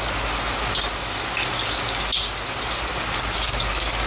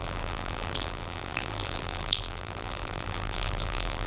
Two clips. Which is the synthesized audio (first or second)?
second